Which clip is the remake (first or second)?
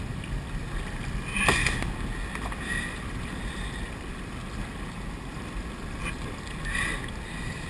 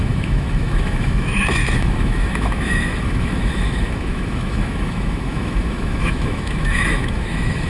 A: second